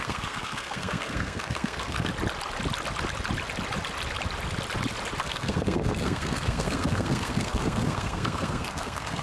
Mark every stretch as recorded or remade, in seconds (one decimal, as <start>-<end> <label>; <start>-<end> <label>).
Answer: 0.0-2.1 remade; 2.1-5.2 recorded; 5.2-9.2 remade